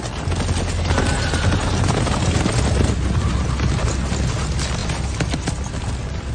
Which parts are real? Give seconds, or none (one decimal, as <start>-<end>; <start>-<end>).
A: 0.0-6.3